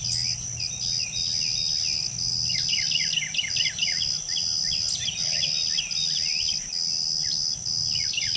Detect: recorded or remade recorded